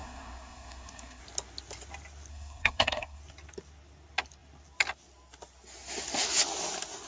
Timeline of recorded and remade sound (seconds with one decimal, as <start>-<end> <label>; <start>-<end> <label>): 0.0-1.2 remade; 1.2-2.3 recorded; 2.3-3.2 remade; 3.2-7.1 recorded